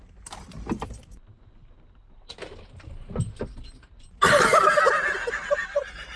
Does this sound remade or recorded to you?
recorded